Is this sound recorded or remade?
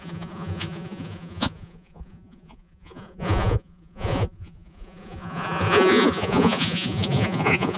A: remade